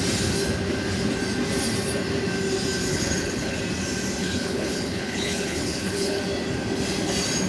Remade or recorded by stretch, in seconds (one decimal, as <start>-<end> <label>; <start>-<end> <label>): 0.0-2.9 recorded; 2.9-3.6 remade; 3.6-4.2 recorded; 4.2-6.2 remade; 6.2-7.5 recorded